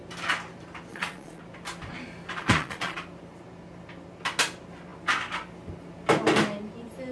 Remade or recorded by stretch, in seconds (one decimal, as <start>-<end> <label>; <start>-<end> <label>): 0.0-0.9 recorded; 0.9-1.4 remade; 1.4-2.4 recorded; 2.4-3.0 remade; 3.0-7.1 recorded